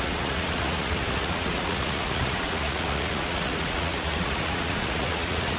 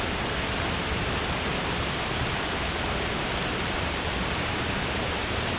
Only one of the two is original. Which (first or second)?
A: second